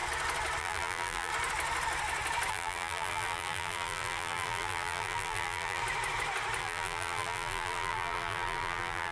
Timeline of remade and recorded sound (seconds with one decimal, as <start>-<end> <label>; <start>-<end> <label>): 0.0-0.6 recorded; 0.6-1.3 remade; 1.3-2.5 recorded; 2.5-5.8 remade; 5.8-6.6 recorded; 6.6-9.1 remade